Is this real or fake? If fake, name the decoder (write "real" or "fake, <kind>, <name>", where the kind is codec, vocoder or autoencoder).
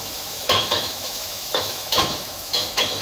fake, autoencoder, DAC-VAE